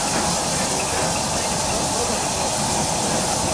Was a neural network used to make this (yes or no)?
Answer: no